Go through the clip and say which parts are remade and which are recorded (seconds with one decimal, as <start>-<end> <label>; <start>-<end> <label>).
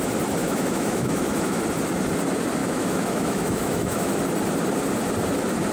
0.0-0.4 recorded; 0.4-1.6 remade; 1.6-2.6 recorded; 2.6-4.2 remade; 4.2-5.7 recorded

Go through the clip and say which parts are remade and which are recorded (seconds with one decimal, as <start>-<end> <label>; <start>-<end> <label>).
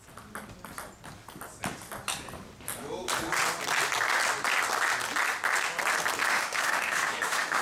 0.0-6.3 recorded; 6.3-7.6 remade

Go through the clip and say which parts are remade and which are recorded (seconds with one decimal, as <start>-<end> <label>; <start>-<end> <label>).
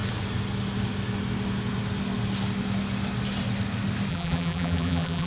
0.0-4.1 recorded; 4.1-5.3 remade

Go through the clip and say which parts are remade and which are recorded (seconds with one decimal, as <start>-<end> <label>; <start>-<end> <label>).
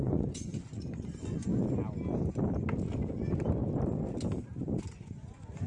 0.0-1.5 remade; 1.5-4.9 recorded; 4.9-5.7 remade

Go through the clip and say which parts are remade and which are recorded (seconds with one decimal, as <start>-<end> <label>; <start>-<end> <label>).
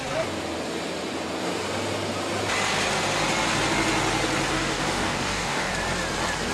0.0-4.5 recorded; 4.5-5.7 remade; 5.7-6.5 recorded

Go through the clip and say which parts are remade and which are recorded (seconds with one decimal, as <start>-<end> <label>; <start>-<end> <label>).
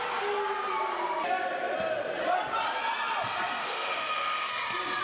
0.0-3.6 recorded; 3.6-4.5 remade; 4.5-5.0 recorded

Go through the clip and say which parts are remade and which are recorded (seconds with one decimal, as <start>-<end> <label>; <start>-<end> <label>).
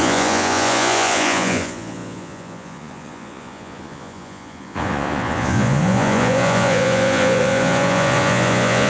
0.0-8.9 remade